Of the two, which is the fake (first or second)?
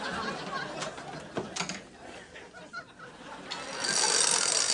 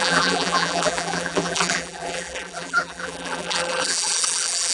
second